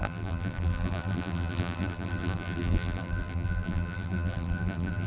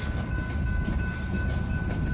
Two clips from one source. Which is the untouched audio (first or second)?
second